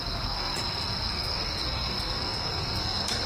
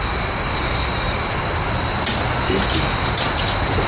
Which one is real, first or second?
second